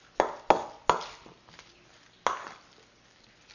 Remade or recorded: recorded